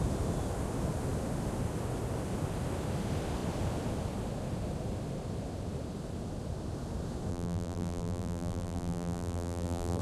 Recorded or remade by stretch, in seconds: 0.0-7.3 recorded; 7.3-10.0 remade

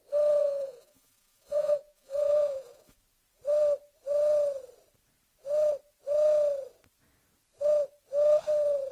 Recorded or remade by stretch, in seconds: 0.0-0.4 recorded; 0.4-3.0 remade; 3.0-8.9 recorded